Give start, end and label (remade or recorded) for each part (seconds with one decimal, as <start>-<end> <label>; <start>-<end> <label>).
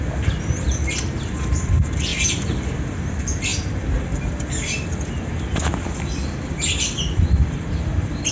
0.0-8.3 recorded